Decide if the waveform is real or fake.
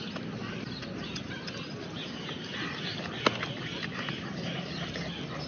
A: real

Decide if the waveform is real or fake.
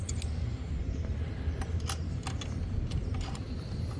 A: real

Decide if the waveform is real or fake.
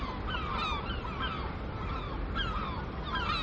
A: real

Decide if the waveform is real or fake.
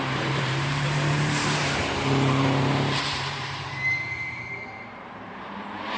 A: fake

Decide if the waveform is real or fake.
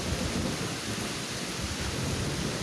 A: real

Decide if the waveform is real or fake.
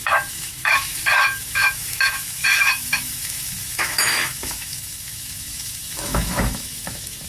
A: fake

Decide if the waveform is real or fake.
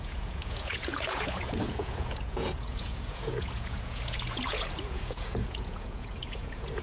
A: fake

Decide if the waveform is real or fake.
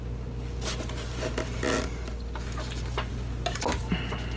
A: real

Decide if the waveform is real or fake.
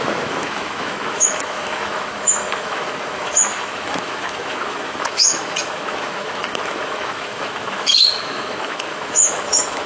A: fake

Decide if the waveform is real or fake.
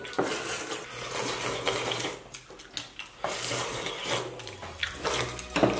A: real